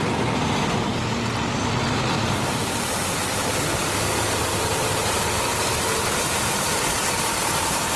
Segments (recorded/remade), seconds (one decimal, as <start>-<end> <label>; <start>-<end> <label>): 0.0-8.0 recorded